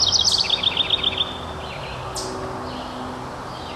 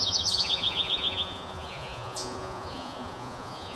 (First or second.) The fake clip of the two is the second